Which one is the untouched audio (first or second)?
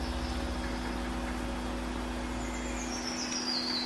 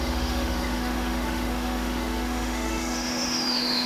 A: first